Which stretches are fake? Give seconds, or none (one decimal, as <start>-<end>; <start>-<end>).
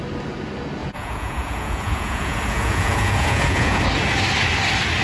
0.8-3.8